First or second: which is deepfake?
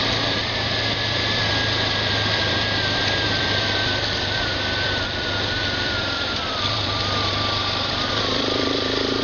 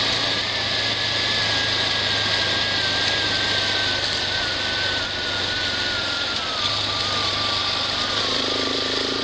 first